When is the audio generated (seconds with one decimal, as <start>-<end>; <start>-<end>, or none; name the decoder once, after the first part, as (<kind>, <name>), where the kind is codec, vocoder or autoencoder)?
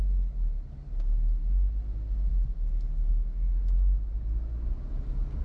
none